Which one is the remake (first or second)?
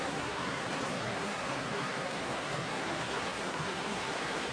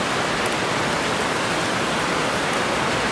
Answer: first